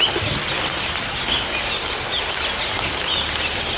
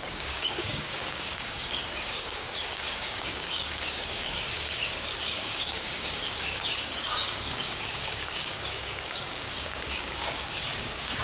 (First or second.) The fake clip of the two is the second